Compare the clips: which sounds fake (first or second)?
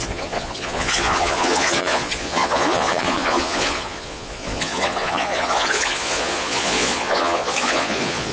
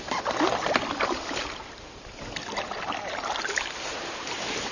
first